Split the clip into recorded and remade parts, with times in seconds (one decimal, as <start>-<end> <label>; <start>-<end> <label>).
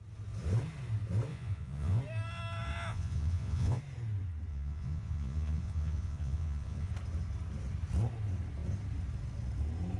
0.0-1.3 recorded; 1.3-2.0 remade; 2.0-2.9 recorded; 2.9-3.8 remade; 3.8-4.5 recorded; 4.5-6.9 remade; 6.9-10.0 recorded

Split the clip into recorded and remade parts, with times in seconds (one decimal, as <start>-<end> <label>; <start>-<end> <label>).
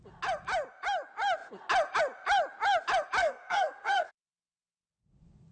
0.0-3.2 recorded; 3.2-4.1 remade; 4.1-5.5 recorded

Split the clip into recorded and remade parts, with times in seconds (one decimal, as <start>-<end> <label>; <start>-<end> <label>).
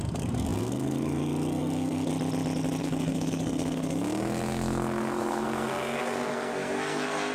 0.0-2.1 remade; 2.1-2.8 recorded; 2.8-7.3 remade